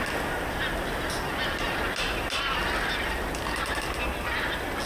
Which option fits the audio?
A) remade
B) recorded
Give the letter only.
B